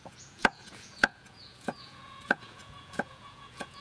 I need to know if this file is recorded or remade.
remade